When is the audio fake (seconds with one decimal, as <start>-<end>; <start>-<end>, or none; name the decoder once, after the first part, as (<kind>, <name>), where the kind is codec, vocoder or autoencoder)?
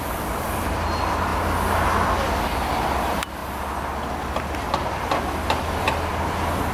0.0-1.3 (vocoder, BigVGAN v2); 3.0-3.4; 4.2-6.7